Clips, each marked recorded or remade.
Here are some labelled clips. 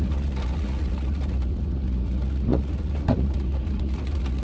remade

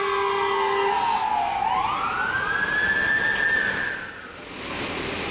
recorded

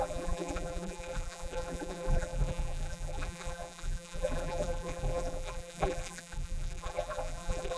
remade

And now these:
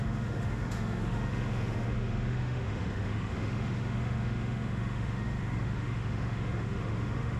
remade